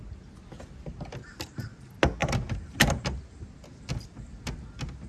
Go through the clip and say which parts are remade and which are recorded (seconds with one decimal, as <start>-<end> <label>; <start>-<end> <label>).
0.0-5.1 recorded